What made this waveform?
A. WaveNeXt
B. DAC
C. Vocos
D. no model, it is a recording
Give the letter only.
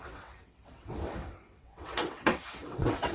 A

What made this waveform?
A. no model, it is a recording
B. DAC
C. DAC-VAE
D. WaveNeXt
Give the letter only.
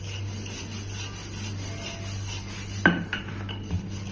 A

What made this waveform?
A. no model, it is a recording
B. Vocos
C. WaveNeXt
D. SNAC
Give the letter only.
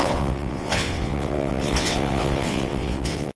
C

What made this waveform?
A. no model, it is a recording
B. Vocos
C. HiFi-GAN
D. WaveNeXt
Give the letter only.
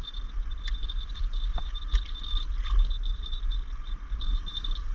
A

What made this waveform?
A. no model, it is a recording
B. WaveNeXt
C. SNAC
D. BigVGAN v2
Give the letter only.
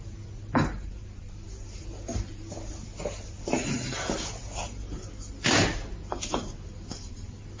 A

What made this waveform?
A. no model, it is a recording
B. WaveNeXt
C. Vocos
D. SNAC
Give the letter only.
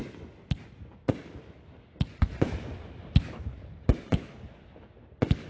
A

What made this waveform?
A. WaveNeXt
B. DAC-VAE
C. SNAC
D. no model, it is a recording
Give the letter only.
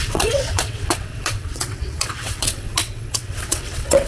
A